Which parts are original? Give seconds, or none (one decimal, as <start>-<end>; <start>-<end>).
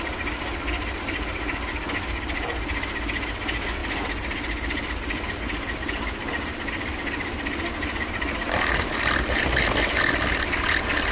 0.0-3.8; 7.7-8.4; 9.6-11.1